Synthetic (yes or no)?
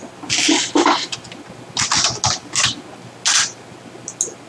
no